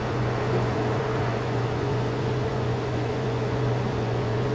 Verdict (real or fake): fake